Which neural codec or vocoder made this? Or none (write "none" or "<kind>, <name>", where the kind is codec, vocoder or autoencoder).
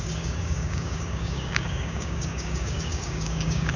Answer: codec, DAC